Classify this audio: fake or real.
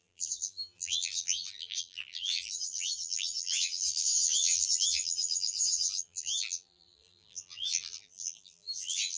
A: fake